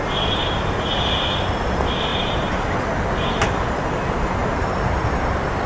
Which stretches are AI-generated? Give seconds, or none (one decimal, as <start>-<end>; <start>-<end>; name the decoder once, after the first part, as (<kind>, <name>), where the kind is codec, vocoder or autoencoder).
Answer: 2.1-3.7 (vocoder, BigVGAN v2); 4.4-5.7